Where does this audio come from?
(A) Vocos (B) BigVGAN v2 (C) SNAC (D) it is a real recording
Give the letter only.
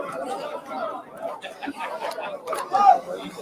D